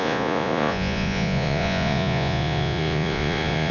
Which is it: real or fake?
fake